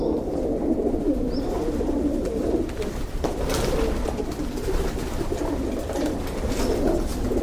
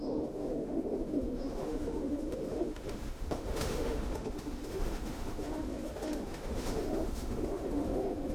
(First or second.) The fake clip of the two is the second